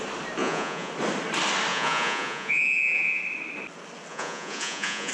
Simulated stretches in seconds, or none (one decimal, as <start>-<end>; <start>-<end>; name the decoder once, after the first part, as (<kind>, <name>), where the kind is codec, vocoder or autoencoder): 0.4-0.9 (vocoder, Vocos); 1.7-3.2; 4.1-5.1